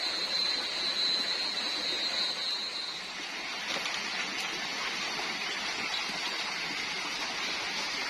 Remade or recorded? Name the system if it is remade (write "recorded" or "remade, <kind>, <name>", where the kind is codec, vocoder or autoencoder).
recorded